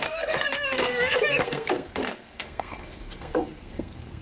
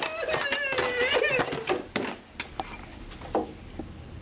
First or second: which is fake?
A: first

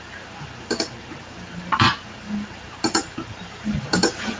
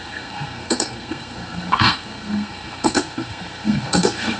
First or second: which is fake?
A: second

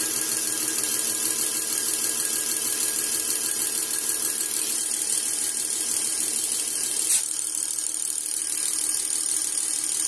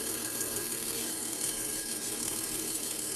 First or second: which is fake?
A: second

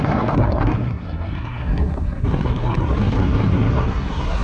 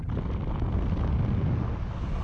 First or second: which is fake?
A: first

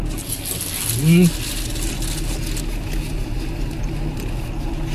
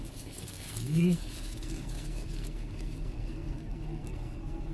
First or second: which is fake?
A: second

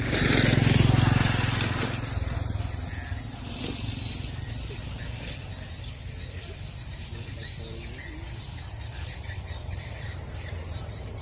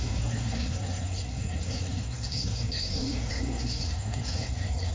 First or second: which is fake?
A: second